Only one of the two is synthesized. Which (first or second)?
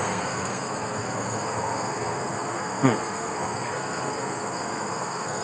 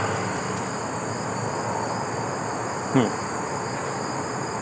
first